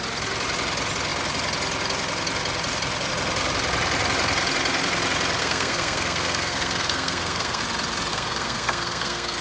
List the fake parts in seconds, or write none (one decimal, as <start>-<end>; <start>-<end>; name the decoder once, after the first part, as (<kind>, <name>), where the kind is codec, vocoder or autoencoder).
5.4-7.6 (codec, SNAC); 8.1-9.4